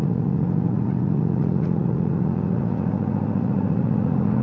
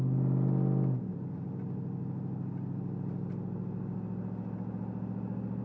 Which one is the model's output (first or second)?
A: first